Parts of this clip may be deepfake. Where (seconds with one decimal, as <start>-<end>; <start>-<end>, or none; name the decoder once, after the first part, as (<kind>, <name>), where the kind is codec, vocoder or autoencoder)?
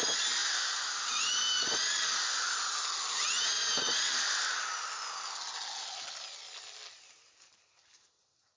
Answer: 0.4-1.4 (vocoder, BigVGAN v2)